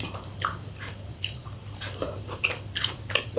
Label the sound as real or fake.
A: real